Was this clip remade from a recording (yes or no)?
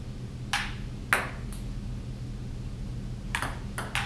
no